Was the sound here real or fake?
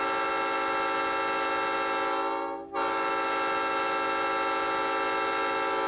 real